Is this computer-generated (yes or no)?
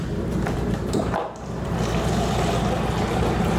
no